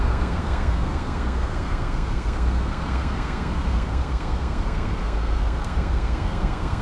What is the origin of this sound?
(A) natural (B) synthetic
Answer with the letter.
B